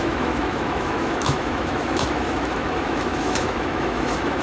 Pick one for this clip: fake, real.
fake